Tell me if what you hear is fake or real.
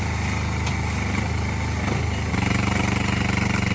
real